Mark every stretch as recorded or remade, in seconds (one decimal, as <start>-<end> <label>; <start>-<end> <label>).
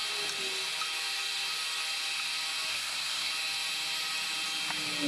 0.0-2.7 recorded; 2.7-3.3 remade; 3.3-5.1 recorded